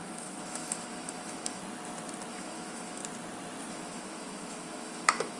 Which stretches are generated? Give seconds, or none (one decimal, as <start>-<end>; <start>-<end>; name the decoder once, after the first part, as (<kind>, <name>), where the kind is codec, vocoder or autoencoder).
0.0-1.6 (autoencoder, DAC-VAE); 2.3-3.0; 3.7-5.4